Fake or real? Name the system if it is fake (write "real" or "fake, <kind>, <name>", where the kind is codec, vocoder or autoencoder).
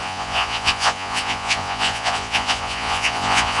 fake, vocoder, Vocos